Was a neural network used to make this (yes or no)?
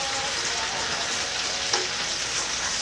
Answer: no